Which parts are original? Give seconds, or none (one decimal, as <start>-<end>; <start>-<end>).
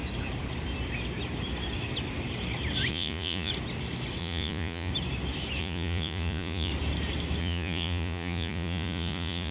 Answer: 0.0-2.9; 3.5-4.2; 4.9-5.6; 6.7-7.4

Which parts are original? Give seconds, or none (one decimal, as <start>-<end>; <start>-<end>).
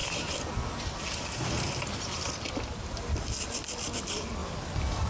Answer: 0.0-3.1; 4.4-5.1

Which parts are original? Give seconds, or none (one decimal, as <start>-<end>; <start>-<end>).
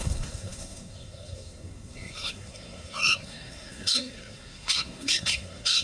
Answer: none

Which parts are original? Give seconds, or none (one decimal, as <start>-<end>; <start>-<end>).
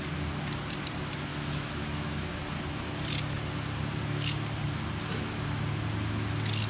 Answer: 0.0-1.3; 2.3-6.7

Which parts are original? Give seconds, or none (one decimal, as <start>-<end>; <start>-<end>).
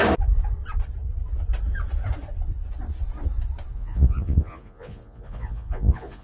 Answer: 0.0-3.7